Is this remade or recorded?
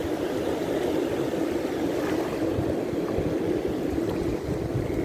recorded